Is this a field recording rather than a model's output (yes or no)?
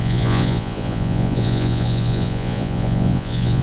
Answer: no